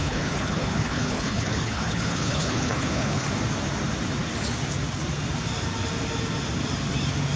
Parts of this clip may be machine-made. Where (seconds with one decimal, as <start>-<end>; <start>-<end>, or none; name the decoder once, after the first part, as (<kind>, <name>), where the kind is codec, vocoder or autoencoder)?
0.0-3.3 (codec, HILCodec)